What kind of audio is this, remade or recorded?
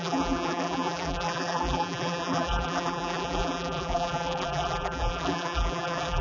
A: remade